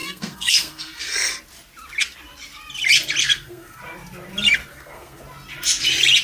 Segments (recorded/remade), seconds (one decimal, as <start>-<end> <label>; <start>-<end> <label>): 0.0-1.3 remade; 1.3-3.2 recorded; 3.2-3.8 remade; 3.8-4.7 recorded; 4.7-5.2 remade; 5.2-6.2 recorded

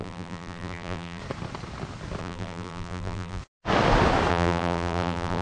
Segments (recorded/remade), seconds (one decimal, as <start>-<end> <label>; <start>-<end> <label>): 0.0-1.2 remade; 1.2-2.2 recorded; 2.2-3.4 remade; 3.4-4.3 recorded; 4.3-5.4 remade

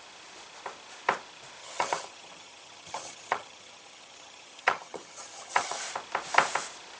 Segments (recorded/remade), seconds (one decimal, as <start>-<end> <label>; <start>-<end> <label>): 0.0-1.6 recorded; 1.6-5.8 remade; 5.8-7.0 recorded

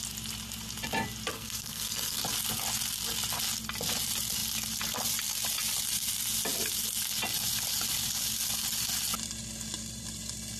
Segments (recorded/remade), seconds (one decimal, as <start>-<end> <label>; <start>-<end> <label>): 0.0-1.3 recorded; 1.3-2.2 remade; 2.2-10.6 recorded

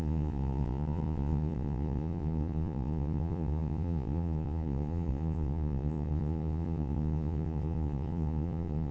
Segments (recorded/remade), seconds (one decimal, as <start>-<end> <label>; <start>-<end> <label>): 0.0-8.9 remade